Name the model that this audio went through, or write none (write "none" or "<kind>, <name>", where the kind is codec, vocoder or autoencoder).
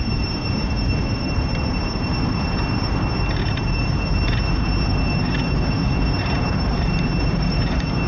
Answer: vocoder, BigVGAN v2